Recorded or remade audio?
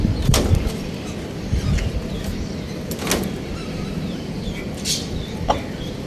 recorded